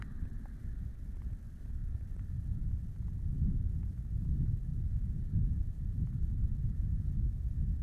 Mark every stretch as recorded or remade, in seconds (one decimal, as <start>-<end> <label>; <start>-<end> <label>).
0.0-4.7 recorded; 4.7-5.3 remade; 5.3-6.8 recorded; 6.8-7.3 remade; 7.3-7.8 recorded